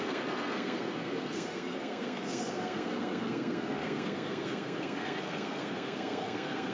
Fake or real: fake